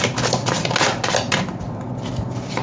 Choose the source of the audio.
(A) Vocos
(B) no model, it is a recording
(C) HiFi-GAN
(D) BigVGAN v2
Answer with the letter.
B